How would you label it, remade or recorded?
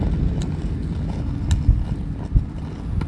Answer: recorded